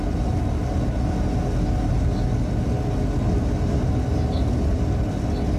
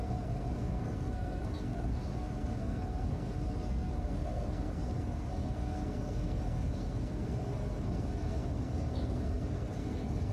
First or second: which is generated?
second